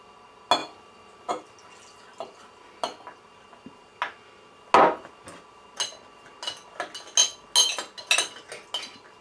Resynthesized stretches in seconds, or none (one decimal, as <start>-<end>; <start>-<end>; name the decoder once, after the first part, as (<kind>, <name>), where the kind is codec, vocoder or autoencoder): none